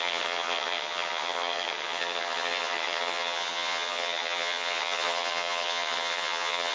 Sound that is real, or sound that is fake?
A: fake